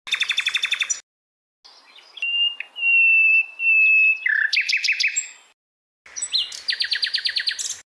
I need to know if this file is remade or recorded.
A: recorded